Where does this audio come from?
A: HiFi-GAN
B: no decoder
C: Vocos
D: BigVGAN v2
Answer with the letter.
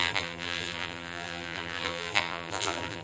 D